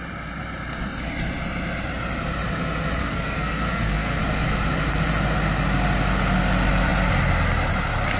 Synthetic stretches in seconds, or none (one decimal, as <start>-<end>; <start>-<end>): 3.0-4.2